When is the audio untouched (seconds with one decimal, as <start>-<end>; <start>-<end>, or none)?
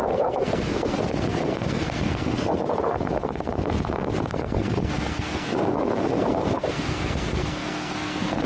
none